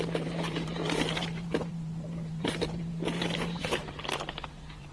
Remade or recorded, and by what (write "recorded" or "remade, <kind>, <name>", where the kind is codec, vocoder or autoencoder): remade, vocoder, BigVGAN v2